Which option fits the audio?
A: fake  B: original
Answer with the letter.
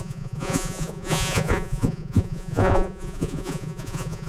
A